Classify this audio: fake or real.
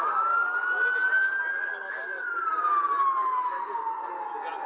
real